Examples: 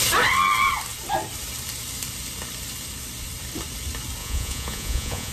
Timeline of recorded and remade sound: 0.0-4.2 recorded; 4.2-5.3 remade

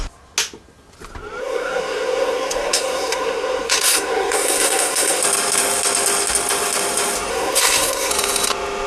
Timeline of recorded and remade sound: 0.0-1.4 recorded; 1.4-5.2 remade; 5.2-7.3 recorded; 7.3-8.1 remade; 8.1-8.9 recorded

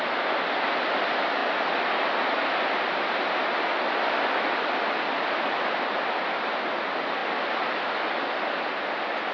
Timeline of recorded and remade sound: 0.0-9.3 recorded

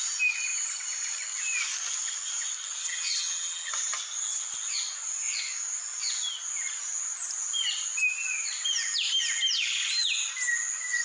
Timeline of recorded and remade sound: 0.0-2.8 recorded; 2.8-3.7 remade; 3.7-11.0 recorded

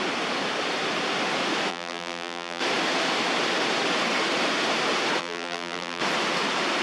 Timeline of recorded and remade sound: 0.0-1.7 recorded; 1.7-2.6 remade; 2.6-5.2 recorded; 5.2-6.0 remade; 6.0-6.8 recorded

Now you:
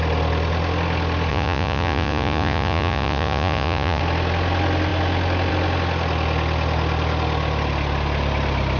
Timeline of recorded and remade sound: 0.0-1.3 recorded; 1.3-4.0 remade; 4.0-8.8 recorded